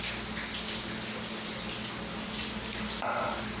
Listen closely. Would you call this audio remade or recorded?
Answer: recorded